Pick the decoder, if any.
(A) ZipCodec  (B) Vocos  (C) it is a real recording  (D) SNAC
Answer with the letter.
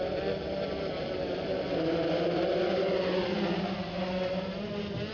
C